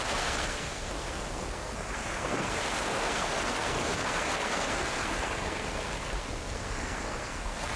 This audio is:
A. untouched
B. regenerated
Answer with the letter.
B